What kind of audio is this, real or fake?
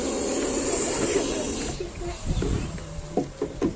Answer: real